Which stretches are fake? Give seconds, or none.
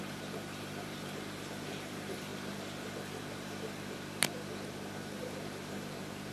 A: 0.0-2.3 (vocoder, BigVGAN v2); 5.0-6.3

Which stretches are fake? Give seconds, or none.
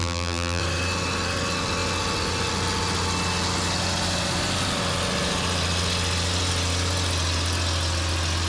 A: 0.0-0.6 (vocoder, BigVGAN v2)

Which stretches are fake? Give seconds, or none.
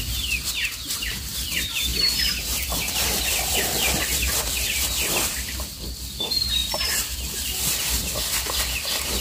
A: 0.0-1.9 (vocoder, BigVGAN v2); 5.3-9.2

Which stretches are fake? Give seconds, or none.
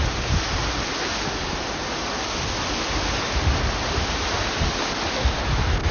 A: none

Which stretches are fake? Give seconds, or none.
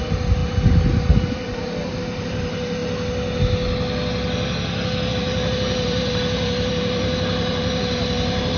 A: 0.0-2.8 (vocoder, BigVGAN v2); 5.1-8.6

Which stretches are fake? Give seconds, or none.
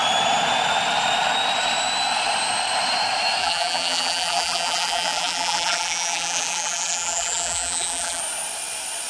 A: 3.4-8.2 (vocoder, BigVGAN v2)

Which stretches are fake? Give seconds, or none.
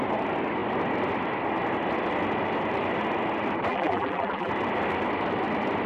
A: 3.7-4.5 (vocoder, BigVGAN v2)